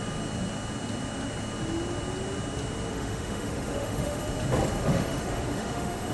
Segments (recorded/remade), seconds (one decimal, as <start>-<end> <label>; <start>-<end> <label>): 0.0-2.9 recorded; 2.9-4.2 remade; 4.2-4.8 recorded; 4.8-6.1 remade